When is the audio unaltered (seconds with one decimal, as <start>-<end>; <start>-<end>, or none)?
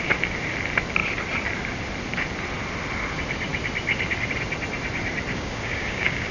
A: 0.0-5.3